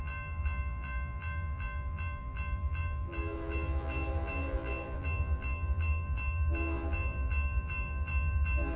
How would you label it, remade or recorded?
remade